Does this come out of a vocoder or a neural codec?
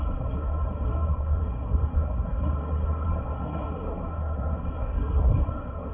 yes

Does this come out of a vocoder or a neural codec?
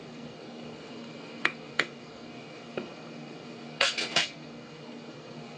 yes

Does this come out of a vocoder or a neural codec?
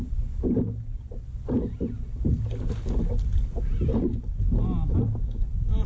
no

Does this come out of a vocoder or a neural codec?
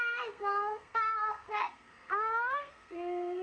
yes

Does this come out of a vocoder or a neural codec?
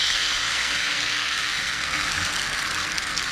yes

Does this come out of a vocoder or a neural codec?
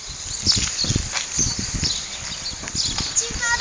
no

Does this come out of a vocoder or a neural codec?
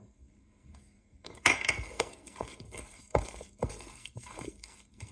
yes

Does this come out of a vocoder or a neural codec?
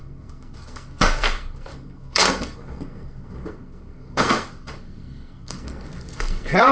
yes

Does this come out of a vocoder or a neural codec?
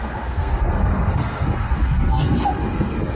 yes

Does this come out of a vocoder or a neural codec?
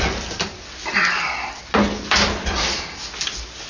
no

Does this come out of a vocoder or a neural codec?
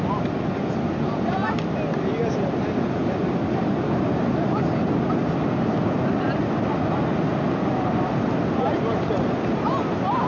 no